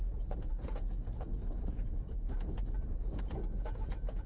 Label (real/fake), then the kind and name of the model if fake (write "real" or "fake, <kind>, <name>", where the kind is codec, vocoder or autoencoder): fake, vocoder, Vocos